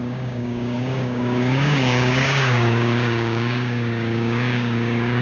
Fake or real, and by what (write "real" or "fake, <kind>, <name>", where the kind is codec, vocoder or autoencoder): fake, codec, DAC